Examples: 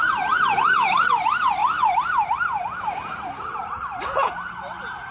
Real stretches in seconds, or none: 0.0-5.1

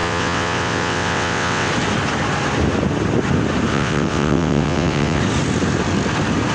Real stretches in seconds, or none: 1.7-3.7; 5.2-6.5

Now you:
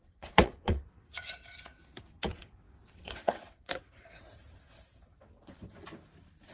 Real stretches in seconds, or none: 1.8-2.3; 5.6-6.5